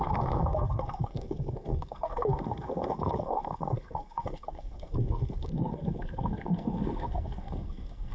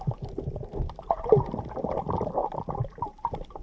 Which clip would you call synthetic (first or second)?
first